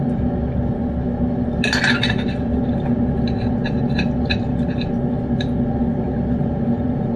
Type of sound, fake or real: real